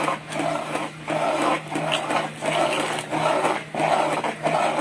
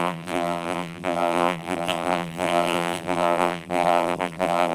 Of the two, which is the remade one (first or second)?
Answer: second